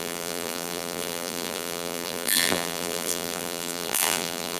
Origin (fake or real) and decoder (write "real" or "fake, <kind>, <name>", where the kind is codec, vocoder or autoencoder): fake, vocoder, BigVGAN v2